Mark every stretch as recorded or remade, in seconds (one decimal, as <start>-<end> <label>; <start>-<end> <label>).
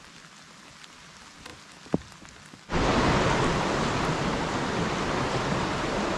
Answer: 0.0-6.2 recorded